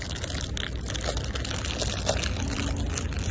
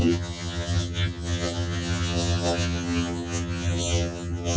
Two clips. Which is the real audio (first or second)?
first